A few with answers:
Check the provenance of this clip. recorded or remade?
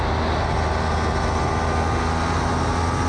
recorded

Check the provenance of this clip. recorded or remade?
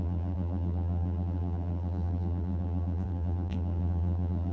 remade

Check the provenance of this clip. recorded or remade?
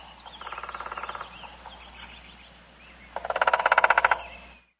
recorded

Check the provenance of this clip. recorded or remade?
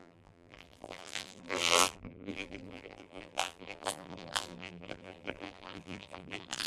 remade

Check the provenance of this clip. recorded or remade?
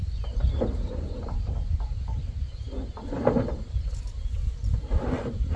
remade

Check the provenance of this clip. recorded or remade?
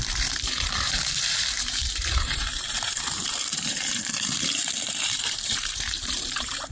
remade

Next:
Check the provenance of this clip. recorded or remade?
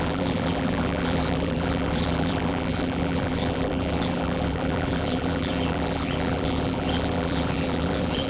remade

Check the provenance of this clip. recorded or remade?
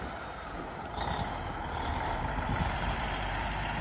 remade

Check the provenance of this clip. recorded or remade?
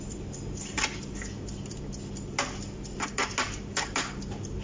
recorded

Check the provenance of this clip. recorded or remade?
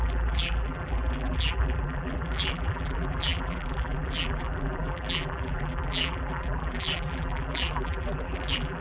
remade